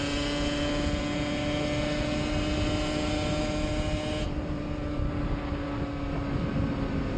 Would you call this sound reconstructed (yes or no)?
no